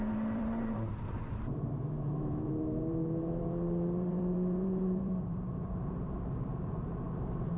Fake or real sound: fake